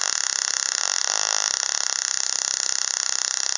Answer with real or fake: real